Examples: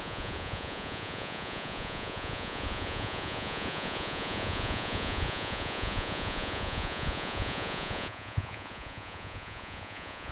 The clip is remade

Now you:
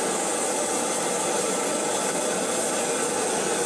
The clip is recorded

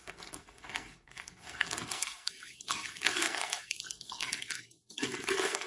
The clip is remade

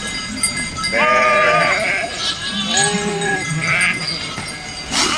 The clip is recorded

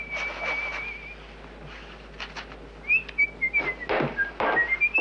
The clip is recorded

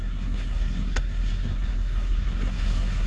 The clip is remade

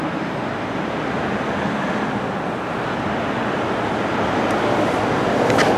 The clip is recorded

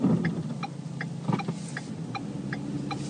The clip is recorded